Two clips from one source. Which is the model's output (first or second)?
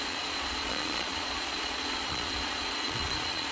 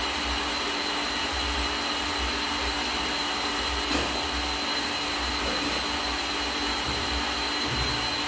first